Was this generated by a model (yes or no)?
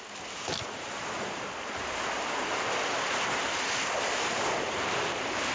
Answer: no